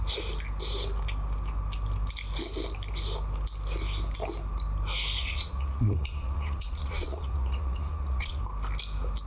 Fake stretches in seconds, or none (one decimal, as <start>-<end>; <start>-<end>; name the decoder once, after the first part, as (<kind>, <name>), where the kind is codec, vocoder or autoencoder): 5.2-8.4 (vocoder, Vocos)